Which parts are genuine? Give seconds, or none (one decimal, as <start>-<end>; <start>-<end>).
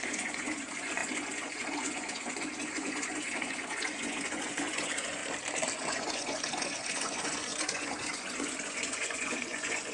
5.2-5.7